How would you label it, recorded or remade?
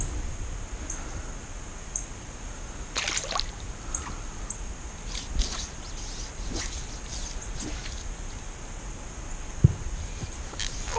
recorded